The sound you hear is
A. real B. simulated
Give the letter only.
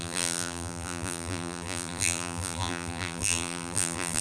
B